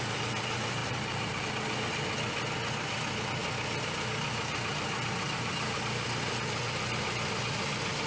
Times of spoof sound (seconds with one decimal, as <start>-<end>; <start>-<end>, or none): 0.8-1.4